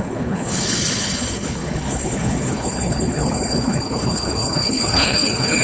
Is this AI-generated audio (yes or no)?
yes